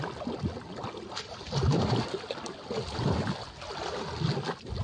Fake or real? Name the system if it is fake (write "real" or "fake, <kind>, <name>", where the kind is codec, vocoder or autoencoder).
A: real